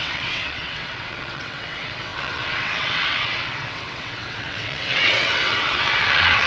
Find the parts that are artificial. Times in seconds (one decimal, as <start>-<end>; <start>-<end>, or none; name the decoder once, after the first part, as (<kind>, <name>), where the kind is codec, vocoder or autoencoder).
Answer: 0.0-6.5 (vocoder, WaveNeXt)